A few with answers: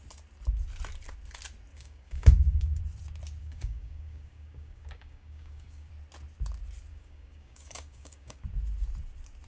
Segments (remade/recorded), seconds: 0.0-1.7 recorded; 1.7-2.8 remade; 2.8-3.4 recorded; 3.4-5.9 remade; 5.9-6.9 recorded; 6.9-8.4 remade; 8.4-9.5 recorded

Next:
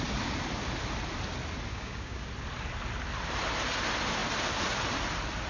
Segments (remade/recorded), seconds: 0.0-1.7 recorded; 1.7-2.3 remade; 2.3-5.5 recorded